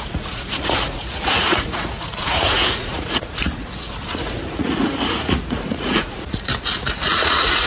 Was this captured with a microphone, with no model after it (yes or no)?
no